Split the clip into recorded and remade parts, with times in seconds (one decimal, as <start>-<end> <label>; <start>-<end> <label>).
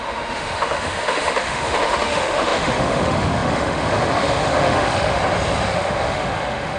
0.0-5.2 remade; 5.2-5.7 recorded; 5.7-6.8 remade